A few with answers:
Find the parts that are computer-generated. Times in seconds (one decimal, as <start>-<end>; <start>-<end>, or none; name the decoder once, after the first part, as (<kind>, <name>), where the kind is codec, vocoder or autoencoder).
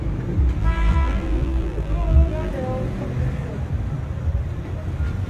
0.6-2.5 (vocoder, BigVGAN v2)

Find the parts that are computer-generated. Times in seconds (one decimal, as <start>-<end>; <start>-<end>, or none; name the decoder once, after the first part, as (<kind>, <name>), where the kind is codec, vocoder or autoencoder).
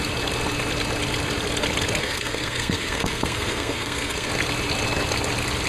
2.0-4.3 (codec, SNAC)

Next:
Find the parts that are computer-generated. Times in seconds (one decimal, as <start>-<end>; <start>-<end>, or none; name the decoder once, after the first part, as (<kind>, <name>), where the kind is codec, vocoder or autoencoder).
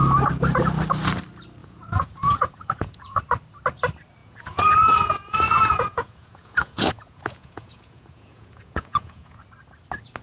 1.6-3.2 (vocoder, Vocos); 4.2-9.4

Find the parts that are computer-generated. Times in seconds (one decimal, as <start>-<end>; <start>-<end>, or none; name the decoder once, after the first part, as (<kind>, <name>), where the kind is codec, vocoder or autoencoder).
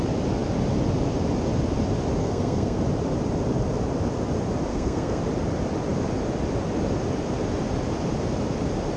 2.2-2.8 (codec, SNAC); 4.7-5.2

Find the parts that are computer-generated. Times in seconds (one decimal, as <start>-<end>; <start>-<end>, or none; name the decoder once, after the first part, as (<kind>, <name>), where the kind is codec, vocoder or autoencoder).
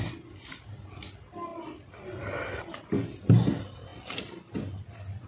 none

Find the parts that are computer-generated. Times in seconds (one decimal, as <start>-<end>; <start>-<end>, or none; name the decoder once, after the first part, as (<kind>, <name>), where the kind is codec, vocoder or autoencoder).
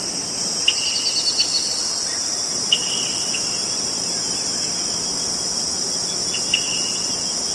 0.0-0.6 (vocoder, BigVGAN v2)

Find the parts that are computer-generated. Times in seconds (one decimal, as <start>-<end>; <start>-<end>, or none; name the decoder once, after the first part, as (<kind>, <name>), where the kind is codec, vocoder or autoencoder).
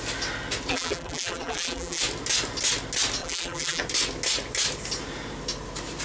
0.7-2.0 (vocoder, BigVGAN v2); 3.2-3.8